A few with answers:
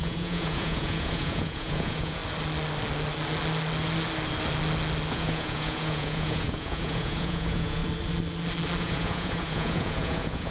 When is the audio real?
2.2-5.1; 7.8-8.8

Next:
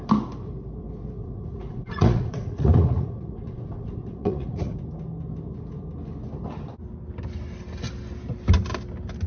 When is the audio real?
0.0-1.2; 4.8-9.3